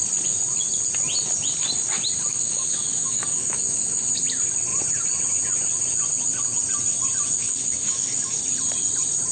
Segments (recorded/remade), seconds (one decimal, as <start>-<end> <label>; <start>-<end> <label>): 0.0-2.3 recorded; 2.3-4.1 remade; 4.1-7.4 recorded; 7.4-8.4 remade; 8.4-9.3 recorded